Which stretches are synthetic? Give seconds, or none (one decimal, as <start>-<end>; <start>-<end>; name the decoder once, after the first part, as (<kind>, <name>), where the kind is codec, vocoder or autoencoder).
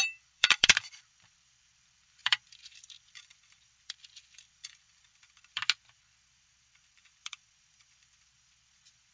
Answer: 0.0-5.6 (vocoder, BigVGAN v2); 7.2-9.1